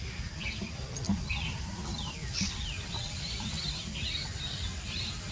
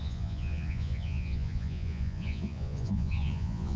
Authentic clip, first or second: first